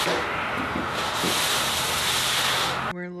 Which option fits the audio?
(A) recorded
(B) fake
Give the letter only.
A